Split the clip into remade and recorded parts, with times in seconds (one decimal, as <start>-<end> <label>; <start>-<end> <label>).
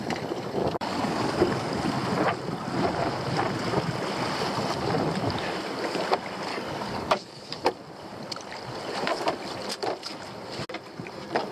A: 0.0-0.6 recorded; 0.6-1.8 remade; 1.8-6.5 recorded; 6.5-7.5 remade; 7.5-11.5 recorded